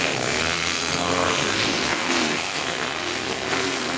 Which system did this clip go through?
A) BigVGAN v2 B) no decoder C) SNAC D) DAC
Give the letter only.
C